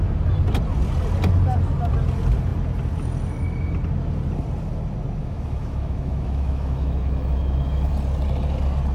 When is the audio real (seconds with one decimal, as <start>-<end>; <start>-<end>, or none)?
0.0-5.2; 7.9-8.9